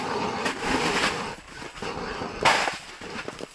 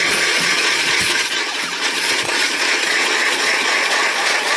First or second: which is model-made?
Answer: second